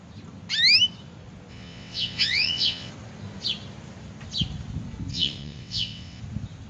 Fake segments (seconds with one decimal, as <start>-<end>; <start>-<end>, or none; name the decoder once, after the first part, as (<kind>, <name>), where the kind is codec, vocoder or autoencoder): 1.5-2.9 (vocoder, WaveNeXt); 5.1-6.2